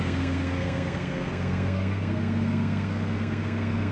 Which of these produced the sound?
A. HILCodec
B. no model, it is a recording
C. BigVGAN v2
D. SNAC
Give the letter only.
D